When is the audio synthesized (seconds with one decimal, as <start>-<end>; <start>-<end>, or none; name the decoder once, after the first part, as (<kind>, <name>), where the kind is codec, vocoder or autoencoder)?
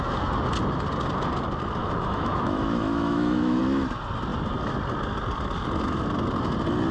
1.8-3.6 (autoencoder, DAC-VAE)